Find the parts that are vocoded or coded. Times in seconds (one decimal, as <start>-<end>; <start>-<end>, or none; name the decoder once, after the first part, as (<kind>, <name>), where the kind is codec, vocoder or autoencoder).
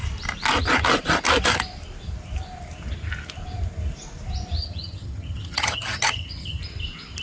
4.6-6.6 (vocoder, HiFi-GAN)